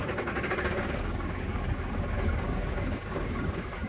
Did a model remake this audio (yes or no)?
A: yes